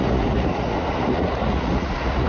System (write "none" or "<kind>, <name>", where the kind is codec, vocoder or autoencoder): vocoder, Vocos